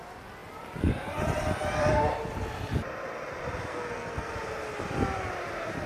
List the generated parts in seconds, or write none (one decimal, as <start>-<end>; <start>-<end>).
3.7-4.3

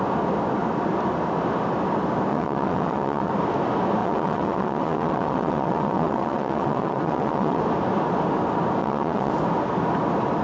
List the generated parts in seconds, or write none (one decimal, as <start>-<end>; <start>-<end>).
2.3-3.3; 4.0-7.6; 8.8-9.3